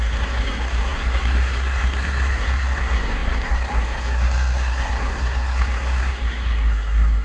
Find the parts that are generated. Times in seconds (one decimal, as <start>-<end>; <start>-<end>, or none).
0.0-7.2